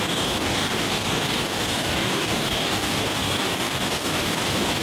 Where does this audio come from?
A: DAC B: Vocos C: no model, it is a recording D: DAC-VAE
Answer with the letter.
A